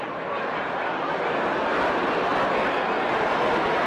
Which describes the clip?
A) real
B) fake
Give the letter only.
A